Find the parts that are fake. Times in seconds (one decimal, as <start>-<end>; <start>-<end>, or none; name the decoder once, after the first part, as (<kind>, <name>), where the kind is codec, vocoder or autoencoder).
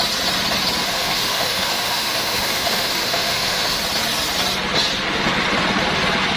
0.8-3.8 (autoencoder, DAC-VAE)